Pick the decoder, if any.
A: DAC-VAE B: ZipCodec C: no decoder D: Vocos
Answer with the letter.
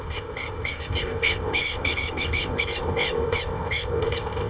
B